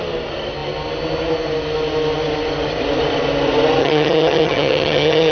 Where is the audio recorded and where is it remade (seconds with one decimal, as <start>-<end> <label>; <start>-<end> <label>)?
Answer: 0.0-3.8 recorded; 3.8-5.3 remade